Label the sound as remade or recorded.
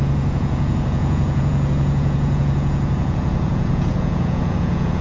remade